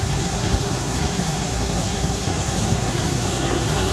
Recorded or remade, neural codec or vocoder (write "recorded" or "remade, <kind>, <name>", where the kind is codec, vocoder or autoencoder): remade, codec, SNAC